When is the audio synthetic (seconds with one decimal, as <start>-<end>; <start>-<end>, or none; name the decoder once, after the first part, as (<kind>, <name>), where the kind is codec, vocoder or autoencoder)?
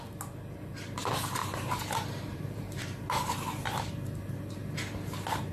1.4-3.9 (vocoder, BigVGAN v2)